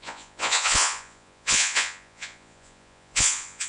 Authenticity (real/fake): fake